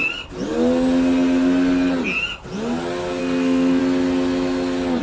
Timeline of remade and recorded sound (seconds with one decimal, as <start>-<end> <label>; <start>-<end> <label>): 0.0-3.2 recorded; 3.2-3.8 remade; 3.8-5.0 recorded